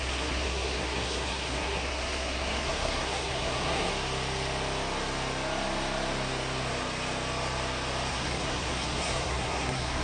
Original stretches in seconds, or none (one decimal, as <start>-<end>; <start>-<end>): 3.9-8.1